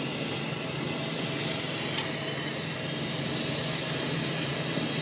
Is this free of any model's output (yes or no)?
yes